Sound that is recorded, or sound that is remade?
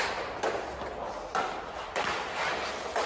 recorded